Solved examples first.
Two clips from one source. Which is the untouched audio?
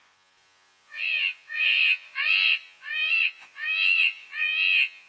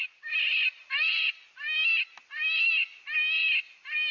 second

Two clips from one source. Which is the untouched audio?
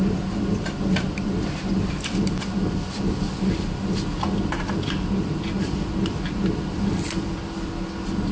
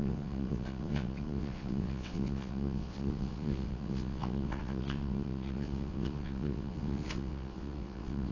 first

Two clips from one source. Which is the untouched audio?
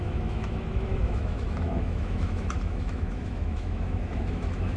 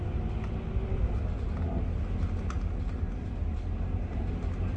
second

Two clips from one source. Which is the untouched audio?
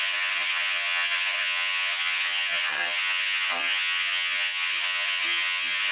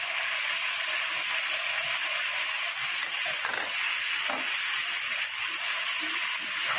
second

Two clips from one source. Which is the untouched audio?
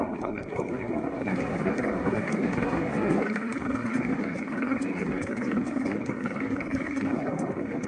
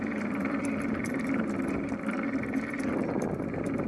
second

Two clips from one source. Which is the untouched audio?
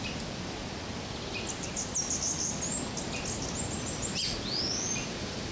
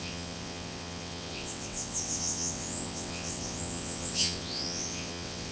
first